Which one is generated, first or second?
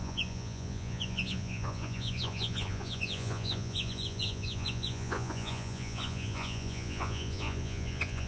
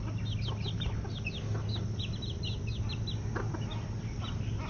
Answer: first